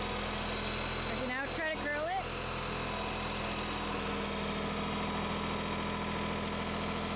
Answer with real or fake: real